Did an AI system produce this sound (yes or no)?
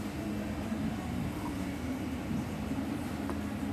no